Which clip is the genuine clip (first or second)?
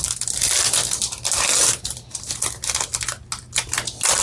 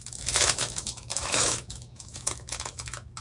first